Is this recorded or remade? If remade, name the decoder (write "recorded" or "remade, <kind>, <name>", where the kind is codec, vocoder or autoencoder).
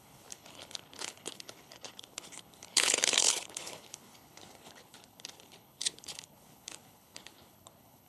remade, codec, HILCodec